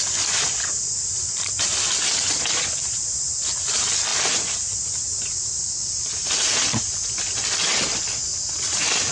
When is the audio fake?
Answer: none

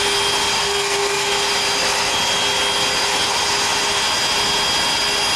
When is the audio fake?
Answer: 0.6-1.3 (codec, SNAC)

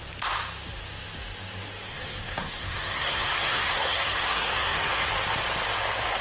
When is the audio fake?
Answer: 1.9-4.9 (codec, SNAC)

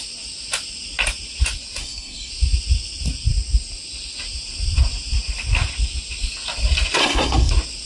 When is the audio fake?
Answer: 1.8-2.3 (codec, SNAC); 7.0-7.5